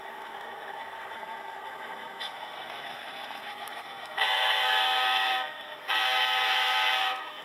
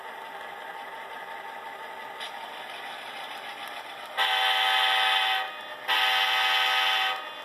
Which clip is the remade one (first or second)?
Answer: first